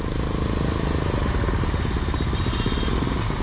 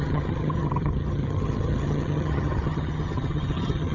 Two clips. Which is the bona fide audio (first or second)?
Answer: first